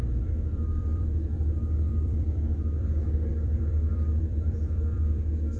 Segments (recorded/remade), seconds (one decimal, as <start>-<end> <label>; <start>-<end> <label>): 0.0-5.6 remade